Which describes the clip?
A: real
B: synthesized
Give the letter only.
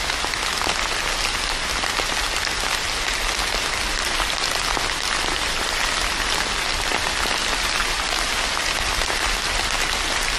A